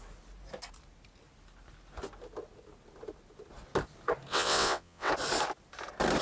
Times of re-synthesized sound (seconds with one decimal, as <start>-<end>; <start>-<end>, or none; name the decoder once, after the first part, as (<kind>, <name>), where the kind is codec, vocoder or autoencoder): 4.3-5.1 (vocoder, WaveNeXt)